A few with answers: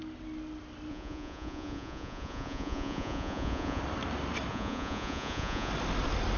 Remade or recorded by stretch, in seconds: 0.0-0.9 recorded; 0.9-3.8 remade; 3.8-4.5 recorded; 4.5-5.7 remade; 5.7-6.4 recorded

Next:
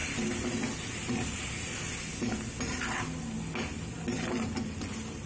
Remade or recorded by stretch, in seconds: 0.0-5.3 recorded

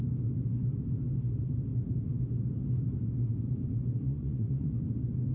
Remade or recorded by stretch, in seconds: 0.0-4.0 recorded; 4.0-4.7 remade; 4.7-5.3 recorded

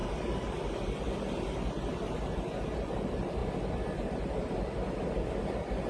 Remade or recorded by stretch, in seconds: 0.0-5.9 recorded